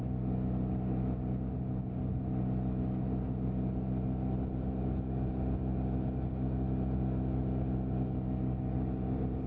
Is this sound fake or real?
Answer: real